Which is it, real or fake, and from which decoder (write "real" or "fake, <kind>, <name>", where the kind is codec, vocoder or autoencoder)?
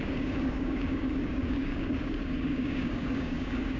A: fake, codec, DAC